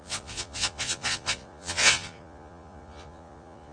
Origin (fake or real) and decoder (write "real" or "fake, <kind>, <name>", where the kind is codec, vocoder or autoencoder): fake, vocoder, Vocos